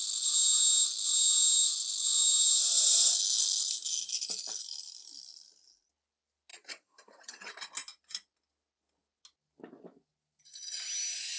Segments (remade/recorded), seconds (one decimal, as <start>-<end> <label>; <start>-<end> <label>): 0.0-6.5 recorded; 6.5-7.5 remade; 7.5-11.4 recorded